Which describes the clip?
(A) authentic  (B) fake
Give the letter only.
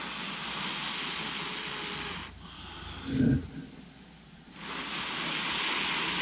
A